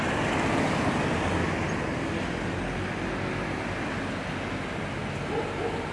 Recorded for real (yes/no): yes